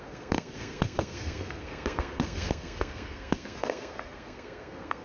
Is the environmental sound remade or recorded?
remade